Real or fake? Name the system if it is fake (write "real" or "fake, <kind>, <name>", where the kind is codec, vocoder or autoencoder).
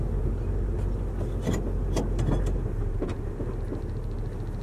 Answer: real